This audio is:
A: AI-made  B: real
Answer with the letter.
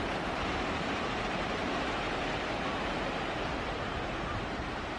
A